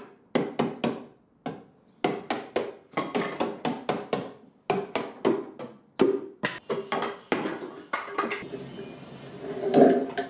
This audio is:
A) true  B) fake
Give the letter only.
A